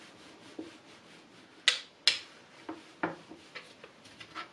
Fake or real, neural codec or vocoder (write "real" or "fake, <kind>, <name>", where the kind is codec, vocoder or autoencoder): real